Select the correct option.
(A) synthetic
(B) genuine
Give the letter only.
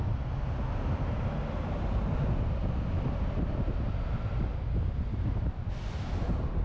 B